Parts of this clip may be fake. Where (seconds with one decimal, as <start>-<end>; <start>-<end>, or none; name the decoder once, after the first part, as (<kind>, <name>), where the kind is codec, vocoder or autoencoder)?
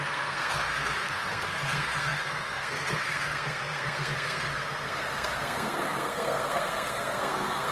0.0-7.7 (codec, SNAC)